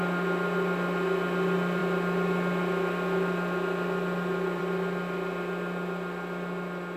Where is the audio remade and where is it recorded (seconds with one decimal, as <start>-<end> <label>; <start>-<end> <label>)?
0.0-7.0 recorded